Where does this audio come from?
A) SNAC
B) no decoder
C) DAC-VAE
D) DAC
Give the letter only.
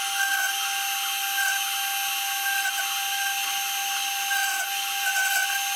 B